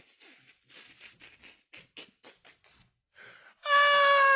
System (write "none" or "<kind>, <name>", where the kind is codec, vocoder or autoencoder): none